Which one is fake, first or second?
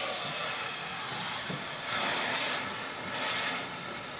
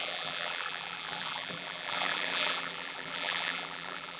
second